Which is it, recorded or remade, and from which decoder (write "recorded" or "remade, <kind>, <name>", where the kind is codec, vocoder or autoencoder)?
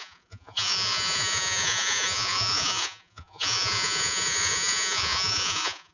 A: remade, vocoder, Vocos